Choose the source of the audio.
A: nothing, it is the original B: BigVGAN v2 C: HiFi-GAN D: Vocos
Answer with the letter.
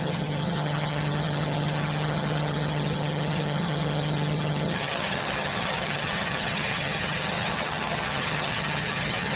C